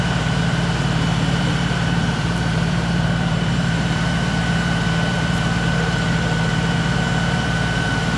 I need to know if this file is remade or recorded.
remade